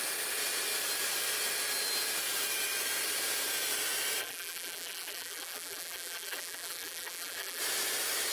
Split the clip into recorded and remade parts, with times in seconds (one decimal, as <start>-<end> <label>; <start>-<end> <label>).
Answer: 0.0-4.2 recorded; 4.2-7.6 remade; 7.6-8.3 recorded

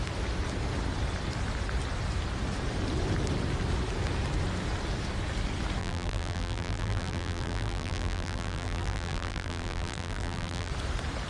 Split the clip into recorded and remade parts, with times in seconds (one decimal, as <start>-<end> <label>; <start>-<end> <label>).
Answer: 0.0-5.8 recorded; 5.8-10.7 remade; 10.7-11.3 recorded

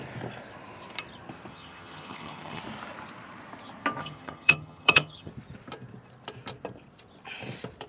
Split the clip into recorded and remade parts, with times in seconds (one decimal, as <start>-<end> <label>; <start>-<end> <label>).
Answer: 0.0-1.5 recorded; 1.5-2.6 remade; 2.6-4.0 recorded; 4.0-5.3 remade; 5.3-7.9 recorded

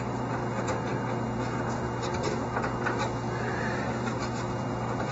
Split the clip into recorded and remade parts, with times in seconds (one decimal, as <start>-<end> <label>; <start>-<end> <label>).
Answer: 0.0-0.4 remade; 0.4-3.5 recorded; 3.5-4.2 remade; 4.2-5.1 recorded